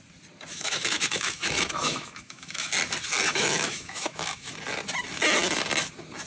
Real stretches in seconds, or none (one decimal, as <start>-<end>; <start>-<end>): 0.0-0.5; 2.7-3.3; 4.5-6.3